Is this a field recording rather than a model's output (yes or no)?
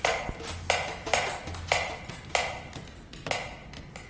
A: yes